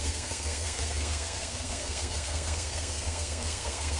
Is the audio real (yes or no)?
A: no